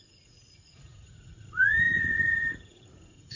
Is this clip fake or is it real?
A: fake